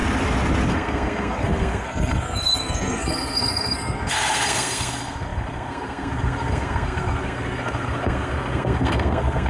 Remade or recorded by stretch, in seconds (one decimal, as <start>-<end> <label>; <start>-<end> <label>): 0.0-0.7 recorded; 0.7-9.5 remade